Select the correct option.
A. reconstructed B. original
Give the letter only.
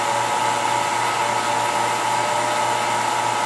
B